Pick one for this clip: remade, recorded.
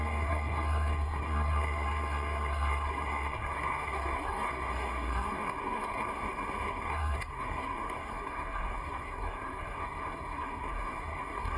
remade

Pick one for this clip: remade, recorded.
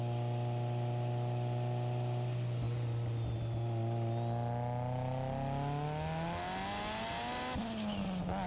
recorded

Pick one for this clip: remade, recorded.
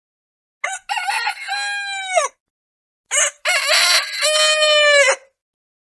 recorded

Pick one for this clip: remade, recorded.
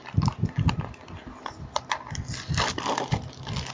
recorded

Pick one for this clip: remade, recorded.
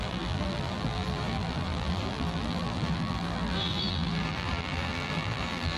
remade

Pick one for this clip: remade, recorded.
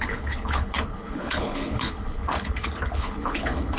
remade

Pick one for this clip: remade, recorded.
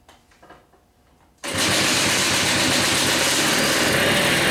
recorded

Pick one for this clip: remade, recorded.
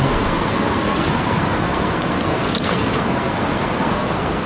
remade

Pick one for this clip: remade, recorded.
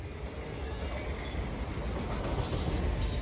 recorded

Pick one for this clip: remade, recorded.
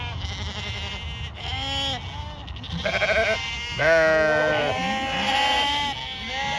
recorded